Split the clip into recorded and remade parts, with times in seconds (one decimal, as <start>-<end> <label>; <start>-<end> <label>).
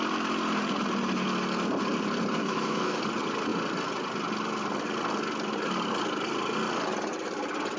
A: 0.0-2.4 recorded; 2.4-3.0 remade; 3.0-7.8 recorded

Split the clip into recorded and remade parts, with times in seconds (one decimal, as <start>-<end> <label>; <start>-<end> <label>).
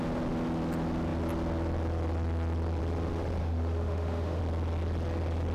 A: 0.0-3.4 recorded; 3.4-4.4 remade; 4.4-5.5 recorded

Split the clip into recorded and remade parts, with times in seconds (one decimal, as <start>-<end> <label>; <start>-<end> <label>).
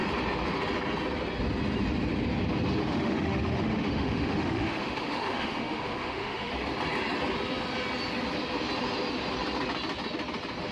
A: 0.0-2.8 recorded; 2.8-6.5 remade; 6.5-10.7 recorded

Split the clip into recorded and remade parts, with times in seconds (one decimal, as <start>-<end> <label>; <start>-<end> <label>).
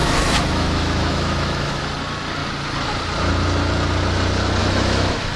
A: 0.0-1.8 remade; 1.8-4.6 recorded; 4.6-5.4 remade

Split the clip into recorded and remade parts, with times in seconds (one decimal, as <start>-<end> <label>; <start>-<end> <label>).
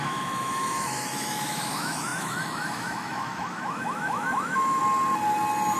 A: 0.0-4.8 remade; 4.8-5.8 recorded